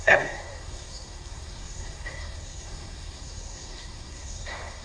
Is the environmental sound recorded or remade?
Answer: remade